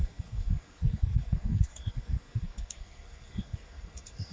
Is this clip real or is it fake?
fake